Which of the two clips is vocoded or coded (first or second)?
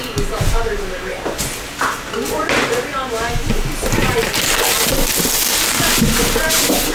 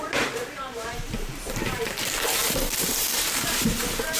second